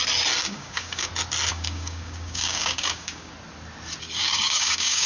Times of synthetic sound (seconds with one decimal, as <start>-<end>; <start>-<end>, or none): 0.4-1.1; 1.5-3.3; 4.2-5.1